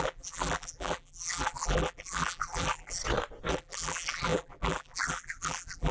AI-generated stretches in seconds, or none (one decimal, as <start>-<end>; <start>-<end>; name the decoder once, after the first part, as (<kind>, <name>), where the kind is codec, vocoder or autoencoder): 0.0-3.0 (vocoder, BigVGAN v2); 3.5-5.9